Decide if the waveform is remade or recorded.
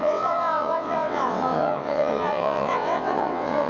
remade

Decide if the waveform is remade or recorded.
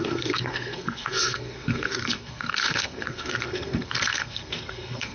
remade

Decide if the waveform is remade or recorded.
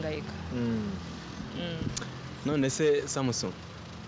recorded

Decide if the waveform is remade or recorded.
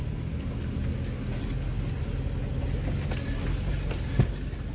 recorded